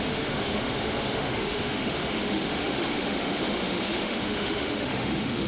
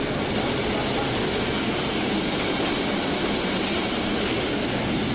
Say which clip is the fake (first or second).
first